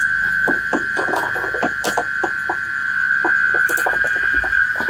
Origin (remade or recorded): recorded